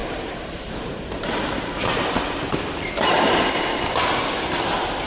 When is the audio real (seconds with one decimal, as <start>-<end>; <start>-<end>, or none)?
2.9-5.1